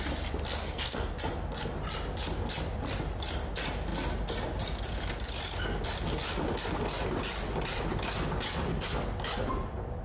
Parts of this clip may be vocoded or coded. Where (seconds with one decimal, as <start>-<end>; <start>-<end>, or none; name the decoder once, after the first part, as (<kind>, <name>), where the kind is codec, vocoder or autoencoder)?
0.6-1.1 (codec, SNAC)